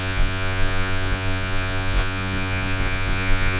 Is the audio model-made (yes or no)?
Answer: yes